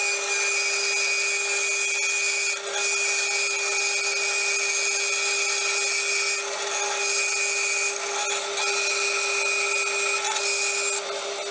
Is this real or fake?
real